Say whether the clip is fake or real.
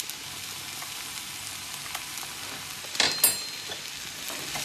real